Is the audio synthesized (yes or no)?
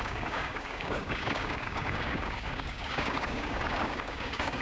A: yes